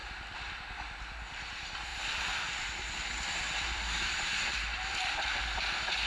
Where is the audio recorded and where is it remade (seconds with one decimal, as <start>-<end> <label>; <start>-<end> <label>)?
0.0-0.6 remade; 0.6-1.9 recorded; 1.9-5.6 remade; 5.6-6.1 recorded